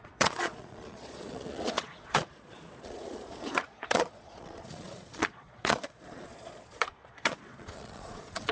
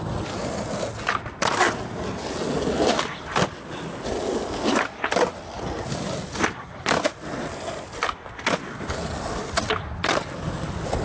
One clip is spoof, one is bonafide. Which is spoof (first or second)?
first